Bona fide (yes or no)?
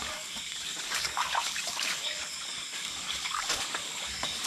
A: no